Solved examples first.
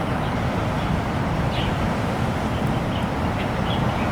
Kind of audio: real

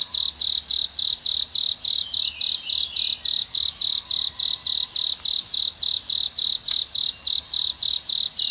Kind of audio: real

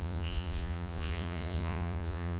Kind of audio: fake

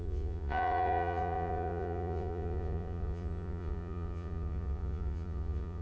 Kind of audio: fake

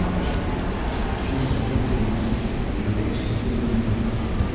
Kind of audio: real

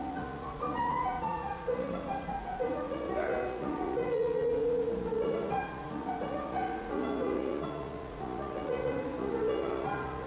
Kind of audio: fake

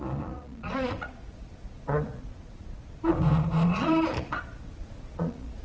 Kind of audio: fake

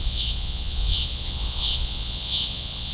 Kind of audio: fake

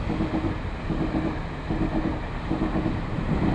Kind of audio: real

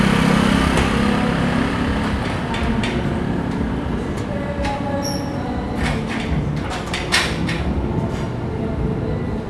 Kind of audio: real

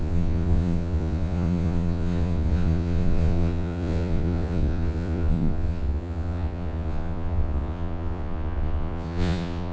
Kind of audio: fake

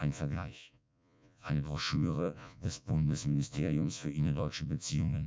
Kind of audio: fake